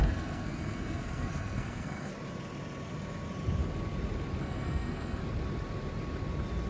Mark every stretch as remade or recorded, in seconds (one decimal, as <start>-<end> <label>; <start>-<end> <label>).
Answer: 0.0-2.1 remade; 2.1-4.4 recorded; 4.4-5.2 remade; 5.2-6.7 recorded